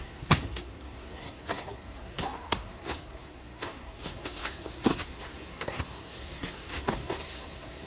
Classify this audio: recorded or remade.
remade